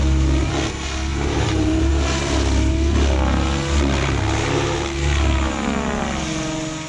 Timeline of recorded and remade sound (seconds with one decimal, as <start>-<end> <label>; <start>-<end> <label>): 0.0-1.1 recorded; 1.1-1.9 remade; 1.9-6.9 recorded